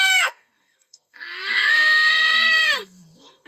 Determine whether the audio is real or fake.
fake